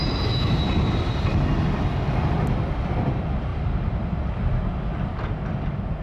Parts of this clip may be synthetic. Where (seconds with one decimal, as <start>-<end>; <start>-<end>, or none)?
3.5-4.2